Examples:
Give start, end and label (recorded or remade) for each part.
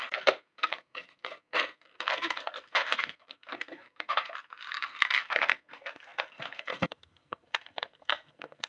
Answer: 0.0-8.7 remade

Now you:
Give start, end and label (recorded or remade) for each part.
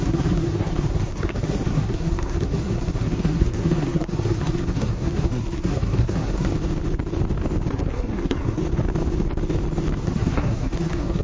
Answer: 0.0-6.5 remade; 6.5-7.7 recorded; 7.7-8.6 remade; 8.6-10.0 recorded; 10.0-11.2 remade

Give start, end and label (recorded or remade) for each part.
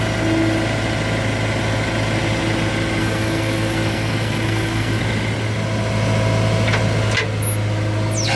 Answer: 0.0-3.0 recorded; 3.0-5.0 remade; 5.0-8.4 recorded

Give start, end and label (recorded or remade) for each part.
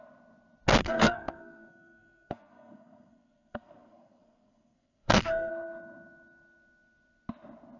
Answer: 0.0-0.8 recorded; 0.8-5.5 remade; 5.5-7.8 recorded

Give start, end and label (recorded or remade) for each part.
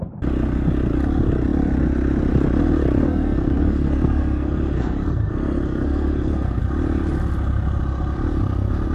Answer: 0.0-3.0 recorded; 3.0-6.6 remade; 6.6-8.9 recorded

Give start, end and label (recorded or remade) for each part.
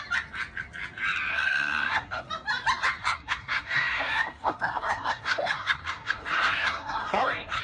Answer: 0.0-1.3 recorded; 1.3-2.3 remade; 2.3-3.0 recorded; 3.0-7.6 remade